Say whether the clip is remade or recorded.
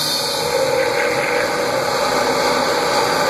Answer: recorded